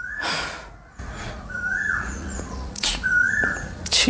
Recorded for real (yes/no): no